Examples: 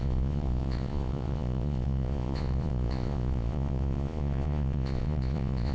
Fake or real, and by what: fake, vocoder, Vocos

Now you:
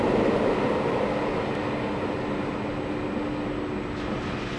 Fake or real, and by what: real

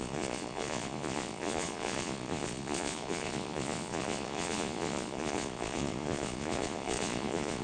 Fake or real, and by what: fake, vocoder, Vocos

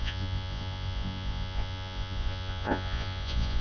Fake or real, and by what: fake, vocoder, Vocos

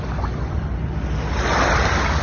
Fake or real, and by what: real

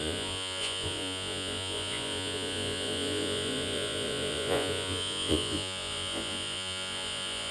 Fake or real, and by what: fake, vocoder, Vocos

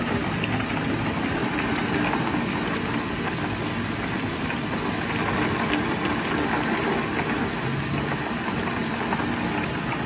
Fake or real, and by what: real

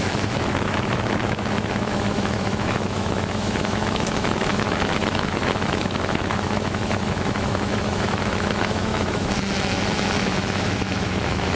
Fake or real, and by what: fake, autoencoder, DAC-VAE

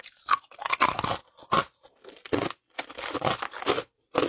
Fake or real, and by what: real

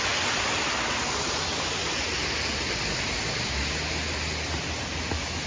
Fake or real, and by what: real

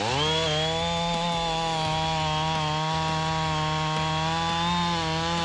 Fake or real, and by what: real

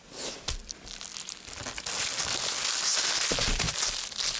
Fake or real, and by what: real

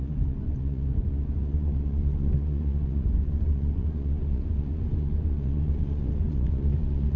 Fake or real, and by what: fake, vocoder, Vocos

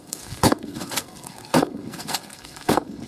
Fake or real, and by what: fake, codec, SNAC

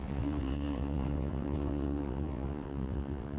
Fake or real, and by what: fake, vocoder, WaveNeXt